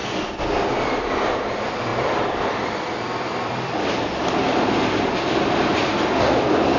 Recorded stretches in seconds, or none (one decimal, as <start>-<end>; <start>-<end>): 0.0-1.9; 4.1-6.8